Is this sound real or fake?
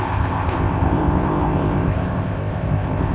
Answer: fake